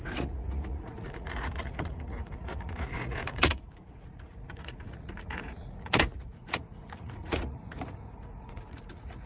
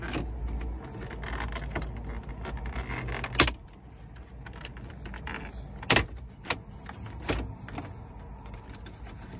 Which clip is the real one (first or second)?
second